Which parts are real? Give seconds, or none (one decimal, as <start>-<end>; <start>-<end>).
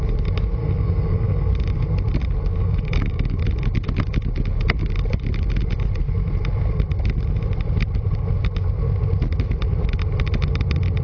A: 0.0-0.6; 1.5-2.6; 3.4-11.0